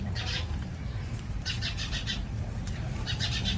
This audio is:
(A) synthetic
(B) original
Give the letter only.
A